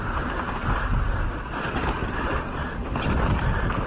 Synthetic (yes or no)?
yes